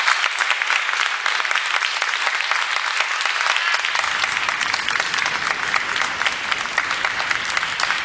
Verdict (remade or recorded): recorded